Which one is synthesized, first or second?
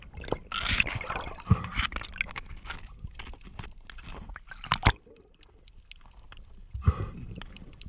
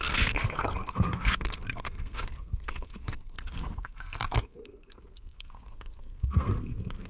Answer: second